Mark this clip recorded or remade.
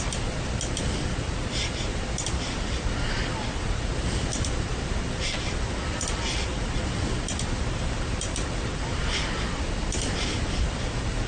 recorded